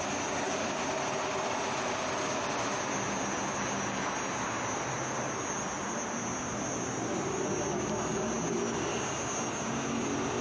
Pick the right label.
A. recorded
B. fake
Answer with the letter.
A